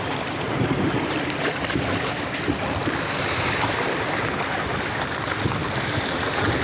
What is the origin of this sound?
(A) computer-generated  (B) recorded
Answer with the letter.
B